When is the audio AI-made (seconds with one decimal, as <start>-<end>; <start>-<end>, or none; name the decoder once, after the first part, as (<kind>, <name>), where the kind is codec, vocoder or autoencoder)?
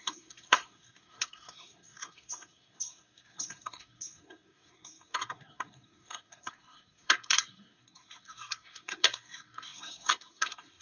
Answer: 0.0-10.8 (codec, SNAC)